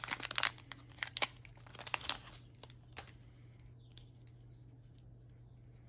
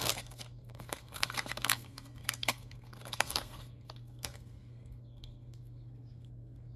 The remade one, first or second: second